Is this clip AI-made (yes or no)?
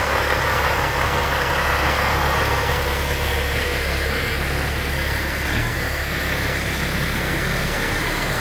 yes